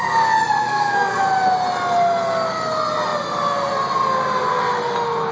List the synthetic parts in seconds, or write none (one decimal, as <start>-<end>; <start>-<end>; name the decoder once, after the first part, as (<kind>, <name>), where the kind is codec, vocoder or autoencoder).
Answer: 0.6-1.2 (codec, SNAC)

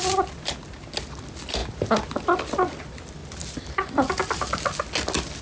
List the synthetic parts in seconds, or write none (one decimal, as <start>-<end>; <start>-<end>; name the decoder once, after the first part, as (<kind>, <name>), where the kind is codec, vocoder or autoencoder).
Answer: none

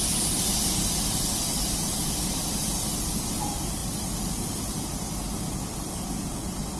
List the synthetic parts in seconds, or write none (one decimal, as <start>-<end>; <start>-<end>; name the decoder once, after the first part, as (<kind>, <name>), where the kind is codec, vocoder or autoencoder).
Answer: none

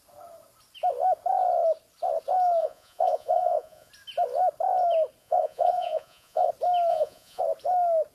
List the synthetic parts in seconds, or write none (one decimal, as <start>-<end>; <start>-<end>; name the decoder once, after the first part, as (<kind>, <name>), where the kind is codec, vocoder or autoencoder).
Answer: 2.6-3.9 (vocoder, Vocos); 5.2-6.5; 6.9-7.4

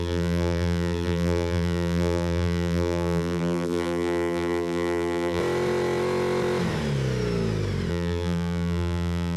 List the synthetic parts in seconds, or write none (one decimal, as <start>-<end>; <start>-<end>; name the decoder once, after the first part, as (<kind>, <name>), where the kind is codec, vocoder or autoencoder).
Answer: 0.0-5.4 (vocoder, BigVGAN v2); 7.9-9.4

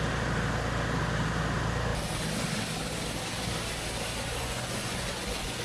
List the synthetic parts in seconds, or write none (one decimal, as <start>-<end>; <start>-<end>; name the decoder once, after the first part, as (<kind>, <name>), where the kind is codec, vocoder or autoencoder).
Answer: 4.4-5.6 (vocoder, Vocos)

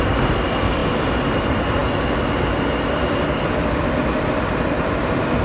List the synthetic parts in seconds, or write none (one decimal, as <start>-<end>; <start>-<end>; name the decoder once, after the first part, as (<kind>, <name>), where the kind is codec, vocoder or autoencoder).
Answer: none

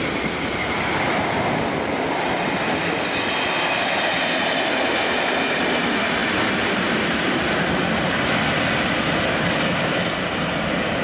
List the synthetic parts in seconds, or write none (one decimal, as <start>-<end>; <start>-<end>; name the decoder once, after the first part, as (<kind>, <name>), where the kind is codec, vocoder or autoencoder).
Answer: none